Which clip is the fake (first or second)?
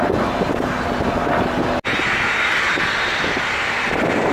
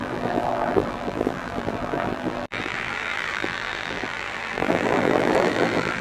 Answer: second